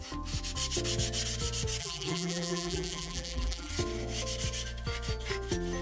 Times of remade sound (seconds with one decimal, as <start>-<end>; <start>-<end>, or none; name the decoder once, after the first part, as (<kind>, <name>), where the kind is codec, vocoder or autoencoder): 1.8-3.7 (vocoder, BigVGAN v2)